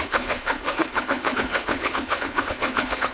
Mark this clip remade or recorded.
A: remade